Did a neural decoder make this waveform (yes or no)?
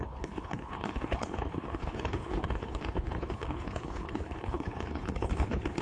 yes